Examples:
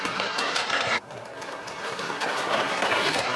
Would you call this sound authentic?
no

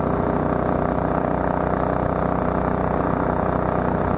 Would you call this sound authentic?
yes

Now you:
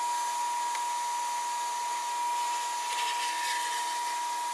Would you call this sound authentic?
yes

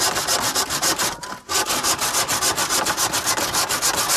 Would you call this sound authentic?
yes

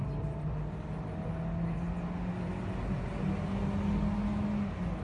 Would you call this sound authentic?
yes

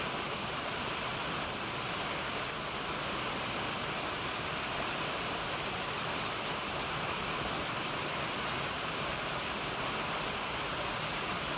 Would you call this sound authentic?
yes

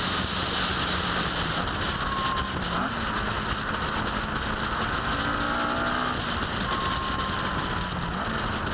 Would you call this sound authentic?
yes